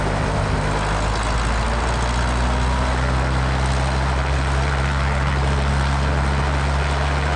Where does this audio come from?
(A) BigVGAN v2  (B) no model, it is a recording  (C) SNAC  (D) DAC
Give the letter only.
B